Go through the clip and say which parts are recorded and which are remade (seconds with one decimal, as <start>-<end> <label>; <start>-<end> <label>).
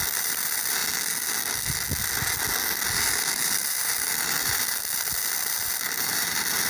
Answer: 0.0-0.8 remade; 0.8-3.0 recorded; 3.0-6.7 remade